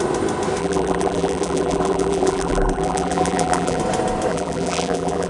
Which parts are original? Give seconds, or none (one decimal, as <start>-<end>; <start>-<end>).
0.0-0.6; 3.8-4.3